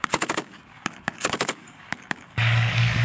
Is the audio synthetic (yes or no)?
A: yes